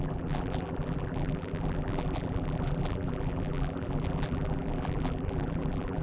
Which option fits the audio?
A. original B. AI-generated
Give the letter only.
B